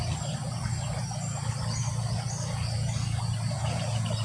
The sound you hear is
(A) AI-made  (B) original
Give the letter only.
B